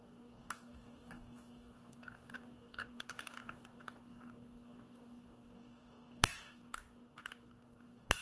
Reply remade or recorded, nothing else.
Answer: remade